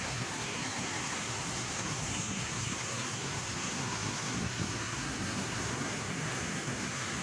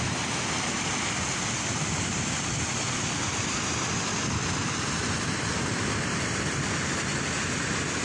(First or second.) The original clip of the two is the second